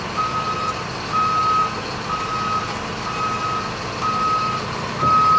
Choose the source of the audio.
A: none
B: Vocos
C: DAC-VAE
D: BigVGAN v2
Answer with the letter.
A